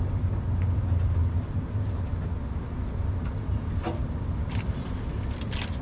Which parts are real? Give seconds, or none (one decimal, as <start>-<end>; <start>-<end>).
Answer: 0.0-5.8